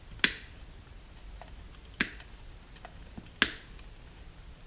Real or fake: real